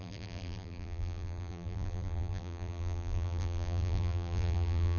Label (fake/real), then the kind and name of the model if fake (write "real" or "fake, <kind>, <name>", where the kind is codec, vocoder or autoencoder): fake, vocoder, BigVGAN v2